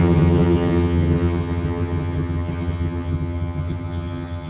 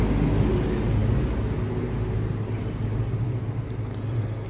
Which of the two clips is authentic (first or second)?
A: second